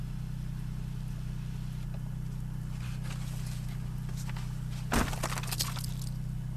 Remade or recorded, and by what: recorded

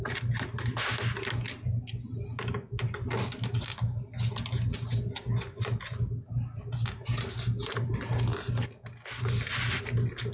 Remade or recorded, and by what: recorded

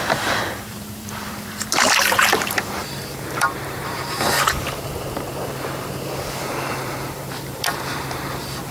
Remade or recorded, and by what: remade, vocoder, BigVGAN v2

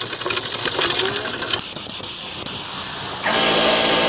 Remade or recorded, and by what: remade, vocoder, BigVGAN v2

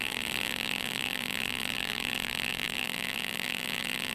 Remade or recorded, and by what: remade, vocoder, BigVGAN v2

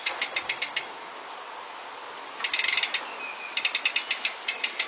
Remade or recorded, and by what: recorded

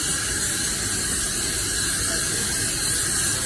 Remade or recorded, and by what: recorded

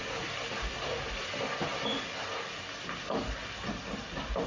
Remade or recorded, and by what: recorded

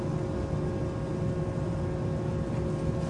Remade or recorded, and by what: recorded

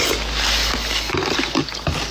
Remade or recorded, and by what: recorded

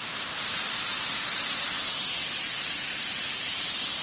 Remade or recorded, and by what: remade, vocoder, BigVGAN v2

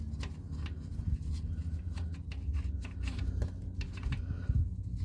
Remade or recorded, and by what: recorded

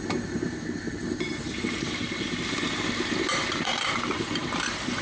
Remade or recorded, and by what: remade, vocoder, BigVGAN v2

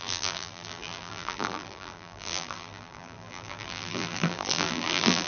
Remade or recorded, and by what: remade, vocoder, BigVGAN v2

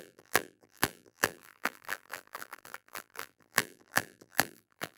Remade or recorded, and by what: remade, vocoder, BigVGAN v2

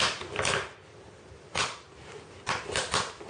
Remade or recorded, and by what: remade, vocoder, BigVGAN v2